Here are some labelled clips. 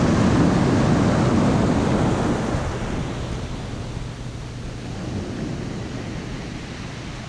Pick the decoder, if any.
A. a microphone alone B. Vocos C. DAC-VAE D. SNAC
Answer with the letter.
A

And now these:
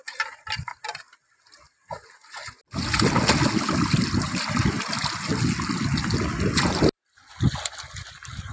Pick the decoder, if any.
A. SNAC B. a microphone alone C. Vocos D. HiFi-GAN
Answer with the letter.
B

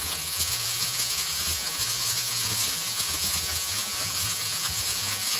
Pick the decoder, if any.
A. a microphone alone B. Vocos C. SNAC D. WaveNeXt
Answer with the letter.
B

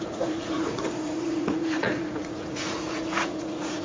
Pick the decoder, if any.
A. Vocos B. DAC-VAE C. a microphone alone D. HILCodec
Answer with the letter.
A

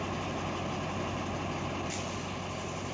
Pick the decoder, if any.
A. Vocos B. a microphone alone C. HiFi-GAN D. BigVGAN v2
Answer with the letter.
B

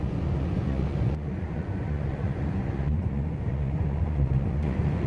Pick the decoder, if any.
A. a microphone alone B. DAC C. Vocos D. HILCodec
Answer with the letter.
C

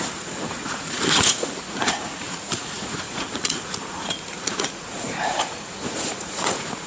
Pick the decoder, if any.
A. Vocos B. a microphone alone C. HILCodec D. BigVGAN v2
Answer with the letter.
A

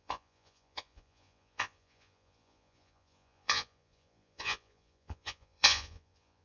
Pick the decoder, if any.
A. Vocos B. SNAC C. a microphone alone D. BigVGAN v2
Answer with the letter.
A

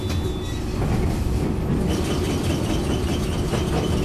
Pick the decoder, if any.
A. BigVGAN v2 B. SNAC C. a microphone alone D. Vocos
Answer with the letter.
C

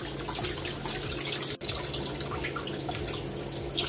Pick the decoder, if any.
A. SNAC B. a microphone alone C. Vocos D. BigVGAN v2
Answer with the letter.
B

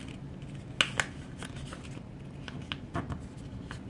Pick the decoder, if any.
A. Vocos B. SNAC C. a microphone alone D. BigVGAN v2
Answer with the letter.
C